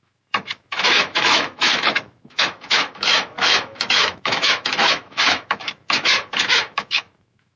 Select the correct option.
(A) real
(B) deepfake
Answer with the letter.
B